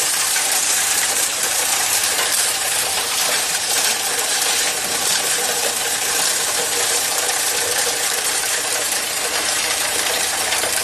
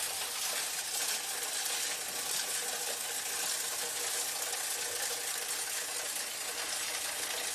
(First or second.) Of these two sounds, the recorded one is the second